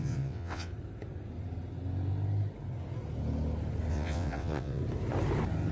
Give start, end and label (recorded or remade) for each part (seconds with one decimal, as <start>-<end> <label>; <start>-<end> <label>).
0.0-0.7 remade; 0.7-3.9 recorded; 3.9-4.8 remade; 4.8-5.7 recorded